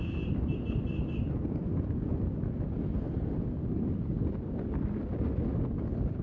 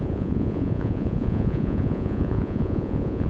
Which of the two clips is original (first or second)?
first